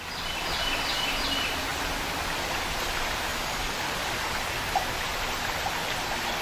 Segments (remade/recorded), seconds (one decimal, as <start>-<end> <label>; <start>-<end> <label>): 0.0-3.3 recorded; 3.3-4.1 remade; 4.1-6.4 recorded